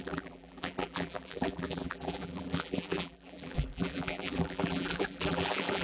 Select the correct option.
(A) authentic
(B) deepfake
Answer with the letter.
B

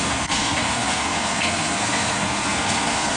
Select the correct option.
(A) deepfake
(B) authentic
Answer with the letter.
A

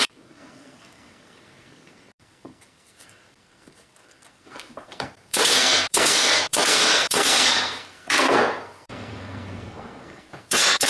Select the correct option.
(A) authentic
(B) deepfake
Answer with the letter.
B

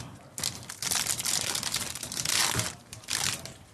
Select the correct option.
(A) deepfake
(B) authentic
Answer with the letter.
B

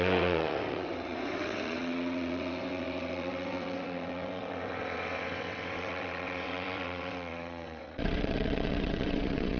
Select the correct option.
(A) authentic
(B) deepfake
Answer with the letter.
B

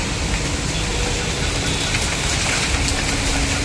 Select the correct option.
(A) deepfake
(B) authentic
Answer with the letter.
B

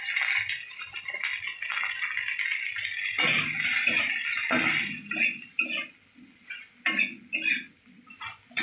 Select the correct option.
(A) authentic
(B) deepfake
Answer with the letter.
A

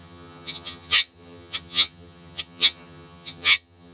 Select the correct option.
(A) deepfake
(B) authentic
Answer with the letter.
A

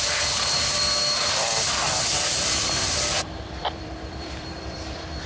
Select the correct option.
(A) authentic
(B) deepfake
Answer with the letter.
B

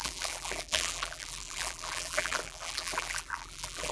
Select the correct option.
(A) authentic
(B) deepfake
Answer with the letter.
B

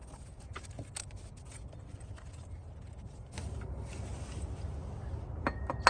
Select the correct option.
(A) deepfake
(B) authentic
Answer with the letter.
B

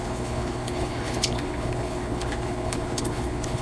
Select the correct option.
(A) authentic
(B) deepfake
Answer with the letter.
B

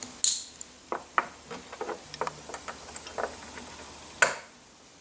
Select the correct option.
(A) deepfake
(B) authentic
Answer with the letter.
B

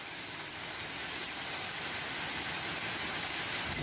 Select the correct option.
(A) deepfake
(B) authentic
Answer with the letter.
B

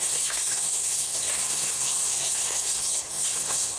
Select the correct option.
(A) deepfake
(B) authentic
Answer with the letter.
A